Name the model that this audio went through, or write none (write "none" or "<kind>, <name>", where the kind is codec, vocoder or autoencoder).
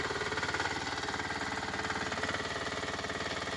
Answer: none